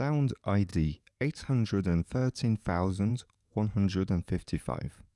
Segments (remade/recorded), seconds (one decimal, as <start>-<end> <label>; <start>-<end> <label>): 0.0-5.2 remade